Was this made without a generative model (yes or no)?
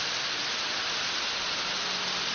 yes